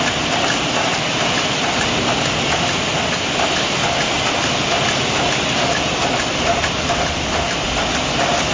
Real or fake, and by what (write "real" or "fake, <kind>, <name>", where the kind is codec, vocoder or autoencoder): real